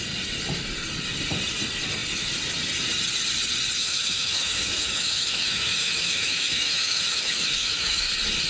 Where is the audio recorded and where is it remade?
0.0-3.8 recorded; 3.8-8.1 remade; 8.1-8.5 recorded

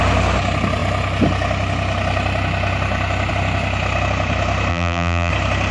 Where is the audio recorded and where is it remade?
0.0-4.7 recorded; 4.7-5.3 remade; 5.3-5.7 recorded